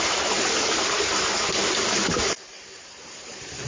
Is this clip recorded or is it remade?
recorded